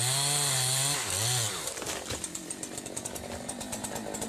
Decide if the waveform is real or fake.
real